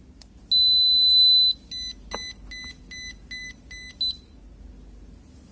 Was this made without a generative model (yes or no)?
yes